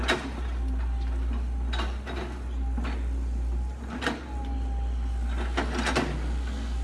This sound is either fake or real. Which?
real